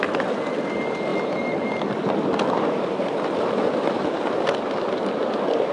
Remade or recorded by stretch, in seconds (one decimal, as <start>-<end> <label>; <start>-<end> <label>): 0.0-5.7 recorded

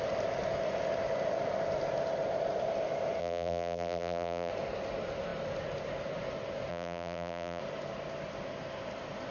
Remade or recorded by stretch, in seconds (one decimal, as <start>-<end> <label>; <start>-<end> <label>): 0.0-3.2 recorded; 3.2-4.5 remade; 4.5-6.7 recorded; 6.7-7.6 remade; 7.6-9.3 recorded

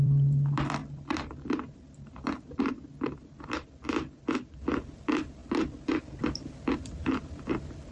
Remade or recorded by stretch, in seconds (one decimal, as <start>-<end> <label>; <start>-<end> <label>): 0.0-7.9 remade

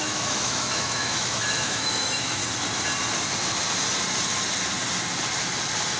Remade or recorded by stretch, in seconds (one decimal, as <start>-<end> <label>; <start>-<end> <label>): 0.0-2.4 remade; 2.4-6.0 recorded